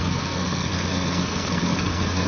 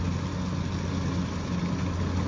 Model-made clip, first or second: first